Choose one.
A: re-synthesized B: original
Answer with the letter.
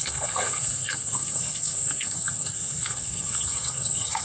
A